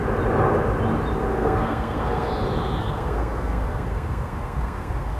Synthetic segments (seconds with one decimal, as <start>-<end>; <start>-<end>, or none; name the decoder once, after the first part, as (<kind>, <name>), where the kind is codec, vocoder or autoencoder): 1.3-2.3 (codec, SNAC); 2.8-5.2